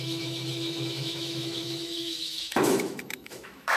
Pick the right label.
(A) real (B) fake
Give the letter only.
B